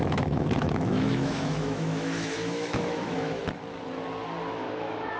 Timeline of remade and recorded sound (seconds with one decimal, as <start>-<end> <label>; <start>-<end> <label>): 0.0-3.4 remade; 3.4-4.5 recorded; 4.5-5.2 remade